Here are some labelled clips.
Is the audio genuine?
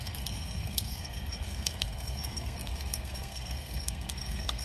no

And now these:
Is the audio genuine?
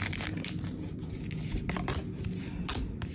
yes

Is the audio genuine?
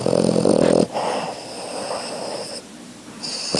yes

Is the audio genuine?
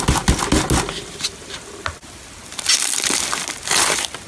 yes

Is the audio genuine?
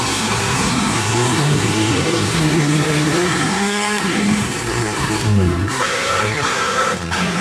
no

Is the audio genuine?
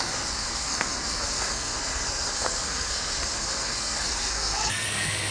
no